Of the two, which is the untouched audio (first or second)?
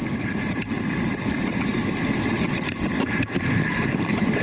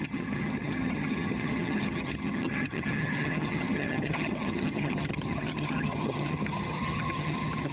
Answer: first